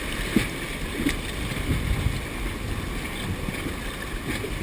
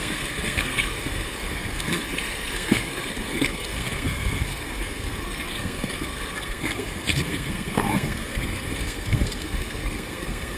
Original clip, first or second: first